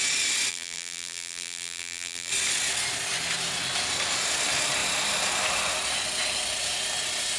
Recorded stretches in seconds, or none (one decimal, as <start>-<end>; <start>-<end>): 0.0-0.5; 2.3-7.4